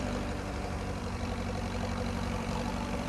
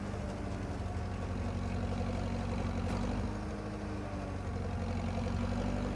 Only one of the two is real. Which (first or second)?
second